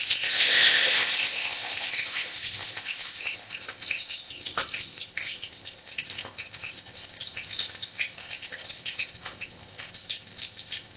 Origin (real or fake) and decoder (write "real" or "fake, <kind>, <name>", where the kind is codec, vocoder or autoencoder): fake, codec, ZipCodec